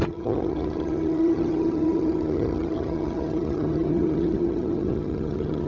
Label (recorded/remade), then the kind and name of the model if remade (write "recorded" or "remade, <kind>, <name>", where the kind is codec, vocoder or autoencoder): remade, vocoder, HiFi-GAN